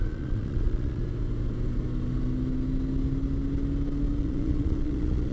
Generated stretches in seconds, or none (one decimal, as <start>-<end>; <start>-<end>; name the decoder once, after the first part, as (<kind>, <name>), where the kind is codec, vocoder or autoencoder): 0.0-1.0 (vocoder, Vocos); 4.2-5.3